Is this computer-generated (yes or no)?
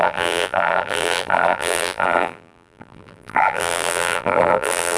yes